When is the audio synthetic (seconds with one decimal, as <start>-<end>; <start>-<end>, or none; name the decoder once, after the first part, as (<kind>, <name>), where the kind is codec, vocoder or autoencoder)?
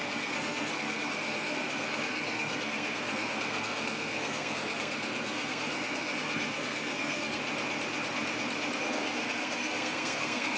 0.0-7.4 (codec, SNAC); 8.8-10.6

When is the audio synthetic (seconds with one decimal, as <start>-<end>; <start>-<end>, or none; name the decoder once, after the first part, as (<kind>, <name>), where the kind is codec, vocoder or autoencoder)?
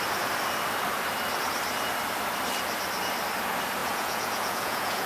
3.8-5.1 (vocoder, Vocos)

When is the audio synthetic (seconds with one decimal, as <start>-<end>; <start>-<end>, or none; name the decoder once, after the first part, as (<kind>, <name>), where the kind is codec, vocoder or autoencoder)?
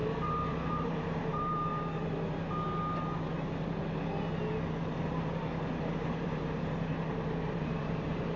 0.7-1.7 (vocoder, BigVGAN v2); 5.9-8.4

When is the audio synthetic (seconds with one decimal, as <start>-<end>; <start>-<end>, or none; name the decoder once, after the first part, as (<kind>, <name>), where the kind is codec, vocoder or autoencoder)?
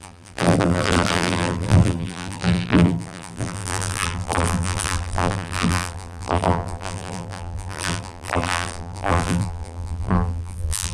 0.0-10.9 (vocoder, BigVGAN v2)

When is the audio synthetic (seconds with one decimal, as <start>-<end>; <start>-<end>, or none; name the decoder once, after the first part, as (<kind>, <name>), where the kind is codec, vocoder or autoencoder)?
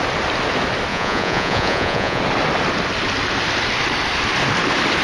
0.9-2.2 (vocoder, Vocos)